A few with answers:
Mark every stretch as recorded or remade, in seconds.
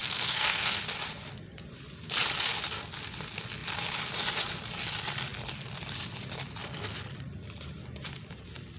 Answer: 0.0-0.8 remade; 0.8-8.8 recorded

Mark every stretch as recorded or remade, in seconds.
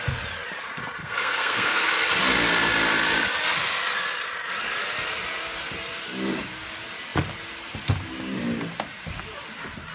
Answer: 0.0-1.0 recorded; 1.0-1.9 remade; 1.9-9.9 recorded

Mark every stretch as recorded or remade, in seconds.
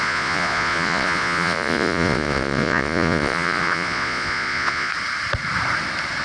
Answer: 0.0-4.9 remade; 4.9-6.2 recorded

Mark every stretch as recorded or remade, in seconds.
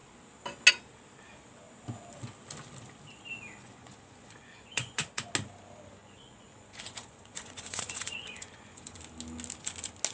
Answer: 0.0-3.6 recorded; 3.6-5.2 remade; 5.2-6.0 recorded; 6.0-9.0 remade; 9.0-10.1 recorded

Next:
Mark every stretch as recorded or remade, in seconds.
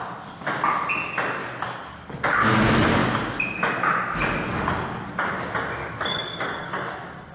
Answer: 0.0-1.4 recorded; 1.4-2.6 remade; 2.6-5.8 recorded; 5.8-6.7 remade; 6.7-7.3 recorded